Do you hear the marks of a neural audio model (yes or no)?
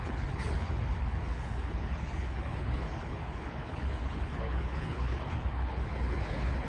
yes